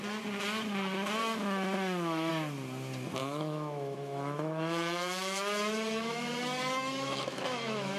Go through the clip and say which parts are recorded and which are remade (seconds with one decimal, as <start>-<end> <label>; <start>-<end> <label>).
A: 0.0-1.2 recorded; 1.2-2.3 remade; 2.3-3.2 recorded; 3.2-8.0 remade

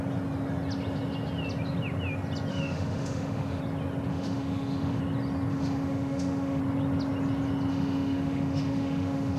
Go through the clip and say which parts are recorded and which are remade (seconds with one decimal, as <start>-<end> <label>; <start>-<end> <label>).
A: 0.0-2.5 recorded; 2.5-3.6 remade; 3.6-4.1 recorded; 4.1-5.0 remade; 5.0-5.5 recorded; 5.5-6.6 remade; 6.6-7.7 recorded; 7.7-9.4 remade

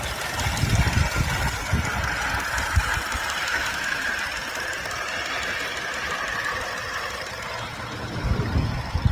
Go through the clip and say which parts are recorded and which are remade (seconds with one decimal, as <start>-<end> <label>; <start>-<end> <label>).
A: 0.0-3.5 recorded; 3.5-4.1 remade; 4.1-9.1 recorded

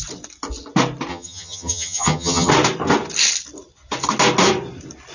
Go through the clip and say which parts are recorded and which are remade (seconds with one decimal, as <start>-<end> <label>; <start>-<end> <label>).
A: 0.0-1.1 recorded; 1.1-2.5 remade; 2.5-5.1 recorded